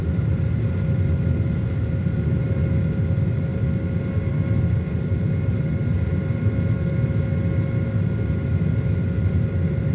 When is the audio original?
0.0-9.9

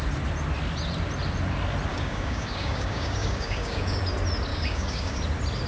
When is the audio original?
0.0-1.9; 4.0-4.5; 5.2-5.7

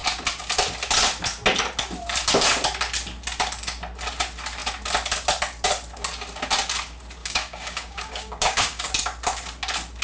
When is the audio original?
0.0-7.2; 8.9-10.0

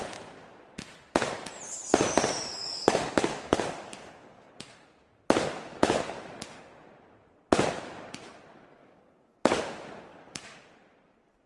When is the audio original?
0.0-2.6; 4.5-8.8; 9.6-10.1; 10.7-11.5